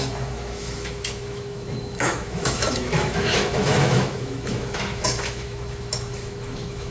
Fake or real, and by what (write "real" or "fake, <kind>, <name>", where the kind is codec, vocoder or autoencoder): fake, autoencoder, DAC-VAE